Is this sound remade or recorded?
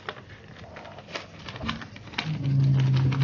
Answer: recorded